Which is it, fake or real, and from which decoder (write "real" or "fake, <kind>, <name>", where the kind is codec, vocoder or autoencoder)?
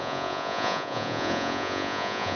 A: fake, vocoder, Vocos